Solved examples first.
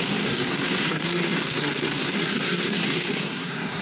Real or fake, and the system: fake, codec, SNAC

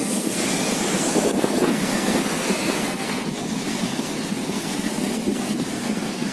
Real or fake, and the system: fake, codec, SNAC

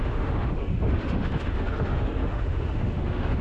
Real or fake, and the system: fake, autoencoder, DAC-VAE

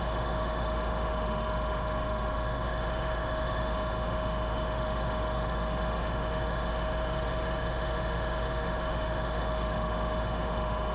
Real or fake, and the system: fake, autoencoder, DAC-VAE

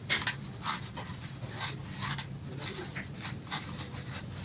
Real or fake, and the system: real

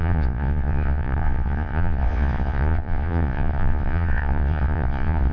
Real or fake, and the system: fake, vocoder, Vocos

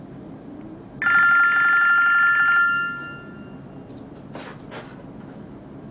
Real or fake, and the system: real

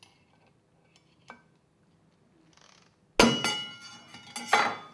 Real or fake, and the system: real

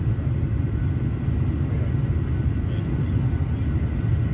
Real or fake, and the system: real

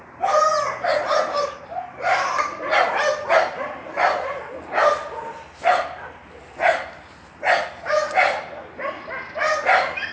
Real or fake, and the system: real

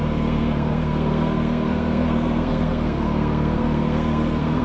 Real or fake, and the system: fake, codec, SNAC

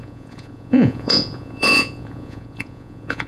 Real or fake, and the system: fake, vocoder, Vocos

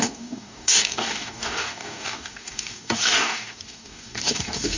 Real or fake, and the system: fake, codec, DAC